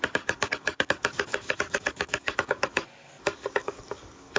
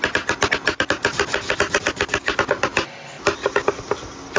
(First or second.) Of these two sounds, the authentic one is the second